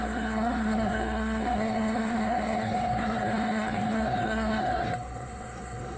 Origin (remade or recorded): remade